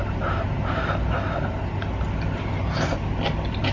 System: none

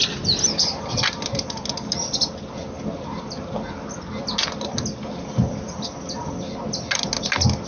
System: none